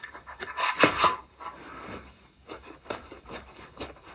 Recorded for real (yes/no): no